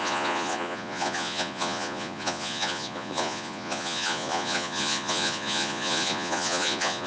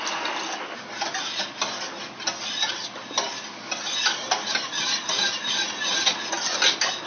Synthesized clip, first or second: first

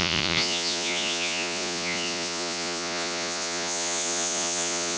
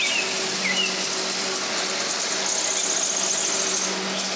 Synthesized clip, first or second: first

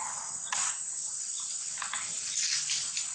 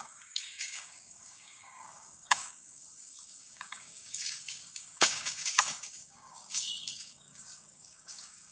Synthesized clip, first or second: second